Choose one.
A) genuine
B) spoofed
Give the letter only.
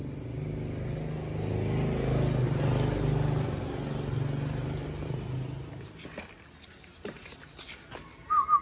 A